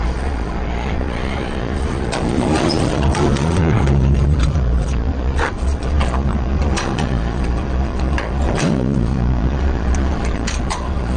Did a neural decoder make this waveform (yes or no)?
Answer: yes